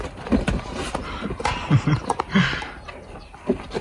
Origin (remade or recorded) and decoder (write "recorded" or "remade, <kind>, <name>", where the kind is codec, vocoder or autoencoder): remade, vocoder, BigVGAN v2